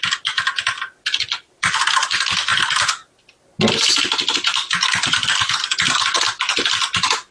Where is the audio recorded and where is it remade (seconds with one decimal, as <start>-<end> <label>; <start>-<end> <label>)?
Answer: 0.0-2.5 remade; 2.5-3.7 recorded; 3.7-7.3 remade